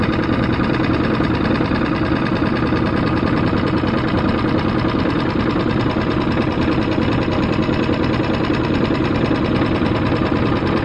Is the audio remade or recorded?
recorded